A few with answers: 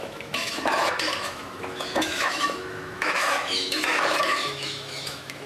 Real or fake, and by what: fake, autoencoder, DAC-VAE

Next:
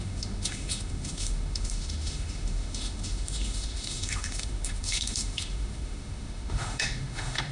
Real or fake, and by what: fake, autoencoder, DAC-VAE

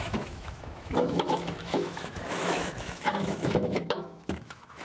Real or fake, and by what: fake, autoencoder, DAC-VAE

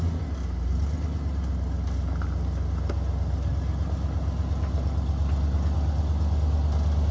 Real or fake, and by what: real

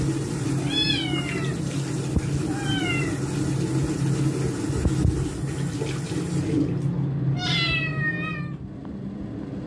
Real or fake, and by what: real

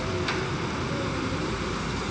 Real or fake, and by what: real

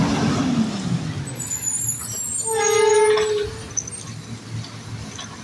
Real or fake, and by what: real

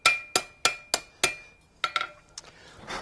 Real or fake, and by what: real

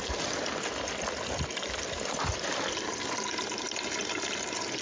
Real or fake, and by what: real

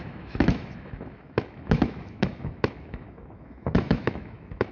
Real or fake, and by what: fake, autoencoder, DAC-VAE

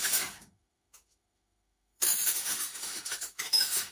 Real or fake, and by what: fake, autoencoder, DAC-VAE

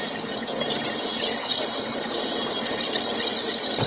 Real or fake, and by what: real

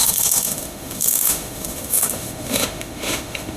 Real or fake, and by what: fake, autoencoder, DAC-VAE